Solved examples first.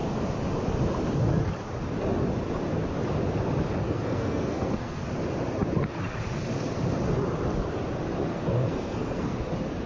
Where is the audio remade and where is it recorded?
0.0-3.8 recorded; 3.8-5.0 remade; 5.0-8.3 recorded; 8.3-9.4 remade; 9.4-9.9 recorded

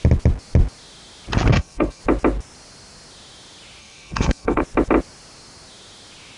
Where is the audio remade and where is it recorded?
0.0-1.5 recorded; 1.5-2.0 remade; 2.0-3.8 recorded; 3.8-4.6 remade; 4.6-6.4 recorded

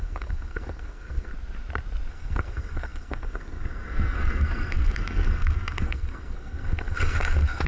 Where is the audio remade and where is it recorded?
0.0-1.3 remade; 1.3-2.1 recorded; 2.1-7.7 remade

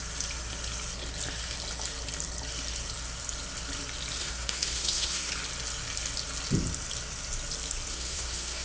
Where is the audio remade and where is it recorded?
0.0-4.2 recorded; 4.2-5.3 remade; 5.3-7.9 recorded; 7.9-8.6 remade

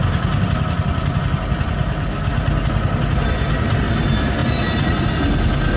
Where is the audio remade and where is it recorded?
0.0-5.8 recorded